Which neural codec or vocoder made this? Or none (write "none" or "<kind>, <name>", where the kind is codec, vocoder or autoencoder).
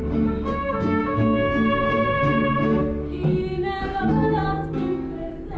codec, DAC